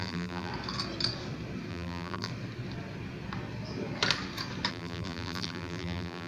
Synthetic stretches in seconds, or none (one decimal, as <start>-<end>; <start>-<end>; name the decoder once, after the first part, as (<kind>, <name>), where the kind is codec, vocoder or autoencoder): 0.0-0.5 (vocoder, BigVGAN v2); 1.7-2.3; 4.7-6.3